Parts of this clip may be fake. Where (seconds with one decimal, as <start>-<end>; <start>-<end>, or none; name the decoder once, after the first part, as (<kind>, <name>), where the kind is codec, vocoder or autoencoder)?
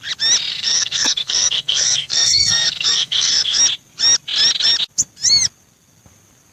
0.5-3.6 (codec, SNAC)